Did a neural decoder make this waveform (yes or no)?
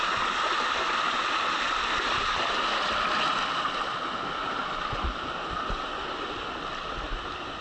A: no